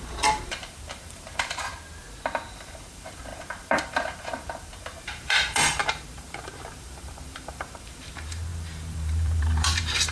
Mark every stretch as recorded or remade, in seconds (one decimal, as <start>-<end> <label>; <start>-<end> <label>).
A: 0.0-1.7 remade; 1.7-2.5 recorded; 2.5-10.1 remade